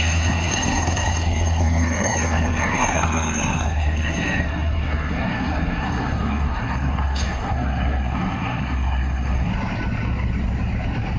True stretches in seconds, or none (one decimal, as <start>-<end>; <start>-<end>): 9.5-11.2